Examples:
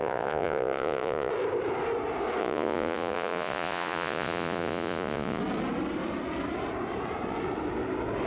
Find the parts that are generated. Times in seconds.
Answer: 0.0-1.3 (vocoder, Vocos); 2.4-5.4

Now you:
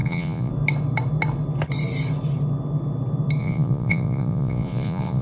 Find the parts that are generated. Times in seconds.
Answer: 0.0-0.5 (vocoder, Vocos); 3.4-5.2

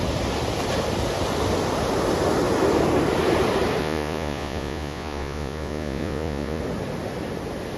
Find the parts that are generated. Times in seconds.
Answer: 3.8-6.6 (vocoder, Vocos)